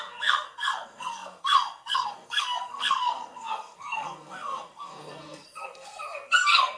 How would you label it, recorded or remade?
remade